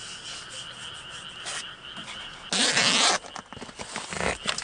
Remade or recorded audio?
recorded